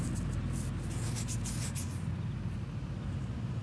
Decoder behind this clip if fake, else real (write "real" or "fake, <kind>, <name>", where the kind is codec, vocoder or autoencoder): real